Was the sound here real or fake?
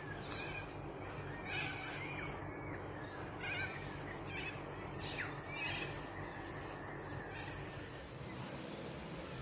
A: real